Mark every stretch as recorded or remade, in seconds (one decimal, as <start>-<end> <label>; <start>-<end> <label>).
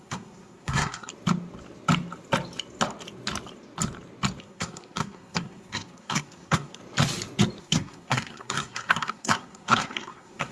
0.0-1.1 remade; 1.1-4.4 recorded; 4.4-6.8 remade; 6.8-7.6 recorded; 7.6-10.5 remade